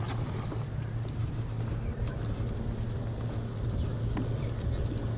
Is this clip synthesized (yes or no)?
no